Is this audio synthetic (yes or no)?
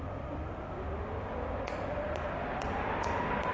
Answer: no